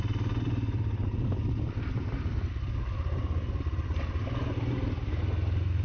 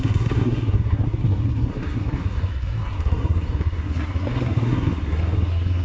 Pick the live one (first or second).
first